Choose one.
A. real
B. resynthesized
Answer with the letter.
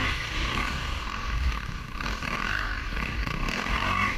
B